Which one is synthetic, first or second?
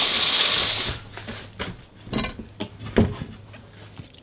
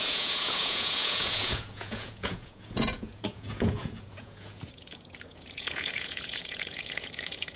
second